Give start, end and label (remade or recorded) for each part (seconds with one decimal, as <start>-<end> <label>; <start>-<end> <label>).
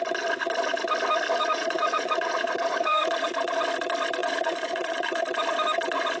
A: 0.0-1.3 recorded; 1.3-3.3 remade; 3.3-4.2 recorded; 4.2-5.2 remade; 5.2-6.2 recorded